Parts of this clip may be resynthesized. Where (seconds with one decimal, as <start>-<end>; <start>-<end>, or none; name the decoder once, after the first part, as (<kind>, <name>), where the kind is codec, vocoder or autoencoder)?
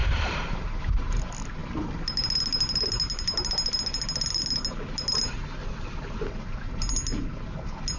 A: 0.0-1.2 (vocoder, BigVGAN v2)